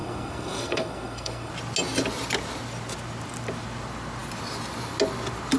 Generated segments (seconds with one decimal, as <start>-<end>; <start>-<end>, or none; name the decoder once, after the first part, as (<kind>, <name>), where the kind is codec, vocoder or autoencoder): 0.0-1.5 (codec, SNAC)